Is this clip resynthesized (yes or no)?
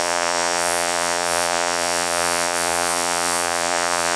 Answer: yes